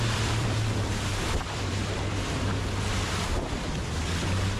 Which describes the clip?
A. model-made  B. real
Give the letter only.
A